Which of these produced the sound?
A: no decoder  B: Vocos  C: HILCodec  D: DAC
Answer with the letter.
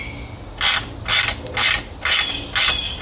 A